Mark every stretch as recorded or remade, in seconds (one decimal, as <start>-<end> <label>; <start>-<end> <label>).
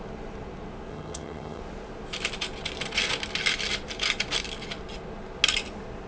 0.0-0.9 recorded; 0.9-1.6 remade; 1.6-6.1 recorded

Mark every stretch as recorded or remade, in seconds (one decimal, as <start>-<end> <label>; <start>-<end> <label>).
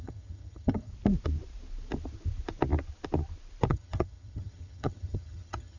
0.0-0.9 remade; 0.9-3.7 recorded; 3.7-5.8 remade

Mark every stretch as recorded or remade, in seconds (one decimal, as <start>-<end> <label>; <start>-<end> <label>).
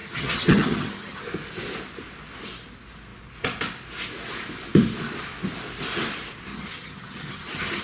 0.0-1.2 remade; 1.2-6.5 recorded; 6.5-7.8 remade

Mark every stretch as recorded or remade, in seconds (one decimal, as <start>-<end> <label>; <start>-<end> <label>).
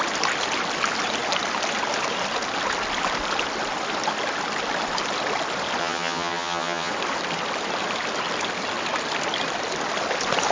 0.0-5.8 recorded; 5.8-6.9 remade; 6.9-10.5 recorded